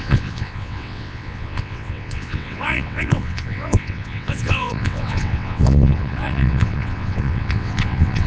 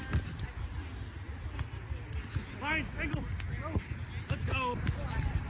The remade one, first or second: first